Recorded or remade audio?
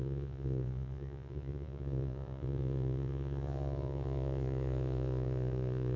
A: remade